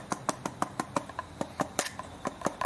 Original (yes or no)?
no